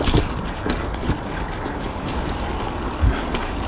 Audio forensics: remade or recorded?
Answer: remade